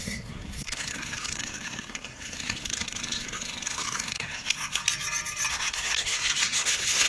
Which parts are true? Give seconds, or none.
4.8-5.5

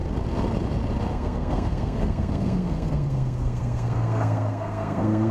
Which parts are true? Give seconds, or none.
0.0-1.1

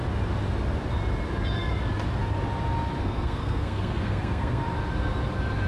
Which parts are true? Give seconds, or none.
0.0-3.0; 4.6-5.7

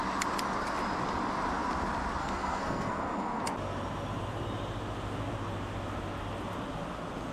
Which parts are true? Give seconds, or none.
0.0-2.2; 3.4-7.3

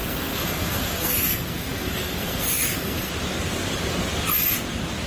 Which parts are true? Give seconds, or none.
3.1-5.1

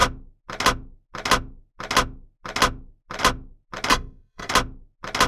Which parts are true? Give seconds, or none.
0.0-3.9; 4.5-5.3